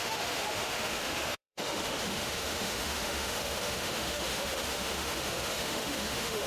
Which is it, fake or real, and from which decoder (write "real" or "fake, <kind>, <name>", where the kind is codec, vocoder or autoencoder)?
fake, autoencoder, DAC-VAE